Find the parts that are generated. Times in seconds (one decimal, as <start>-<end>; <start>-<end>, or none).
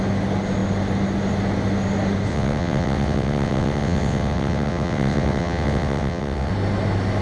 2.3-6.5